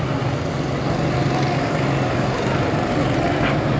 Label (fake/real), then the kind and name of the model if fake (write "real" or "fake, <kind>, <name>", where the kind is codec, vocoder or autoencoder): real